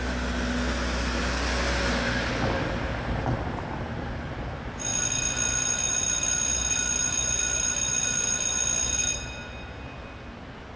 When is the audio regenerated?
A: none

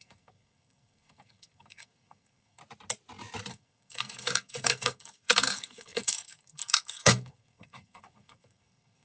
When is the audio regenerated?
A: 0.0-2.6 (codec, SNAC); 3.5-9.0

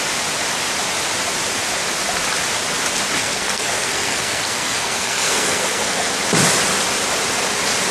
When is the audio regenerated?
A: 3.2-6.2 (codec, SNAC)

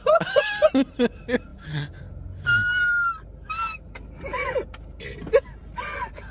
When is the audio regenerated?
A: none

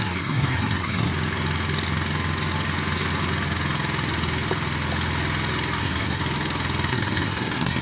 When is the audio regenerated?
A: 0.0-1.1 (codec, SNAC); 5.8-6.2; 6.9-7.8